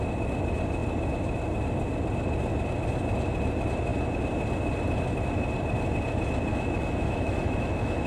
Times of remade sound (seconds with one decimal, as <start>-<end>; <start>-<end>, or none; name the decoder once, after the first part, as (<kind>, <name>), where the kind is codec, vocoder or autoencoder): 6.5-8.1 (autoencoder, DAC-VAE)